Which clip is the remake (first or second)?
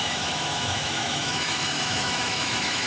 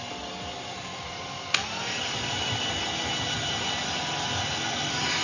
first